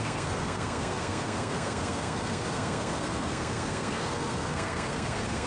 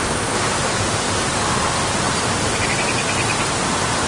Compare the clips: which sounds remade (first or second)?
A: first